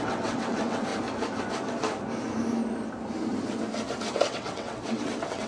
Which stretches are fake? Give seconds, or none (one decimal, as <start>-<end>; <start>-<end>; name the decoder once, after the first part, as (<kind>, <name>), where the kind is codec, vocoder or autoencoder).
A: 0.0-0.9 (vocoder, WaveNeXt); 4.2-5.5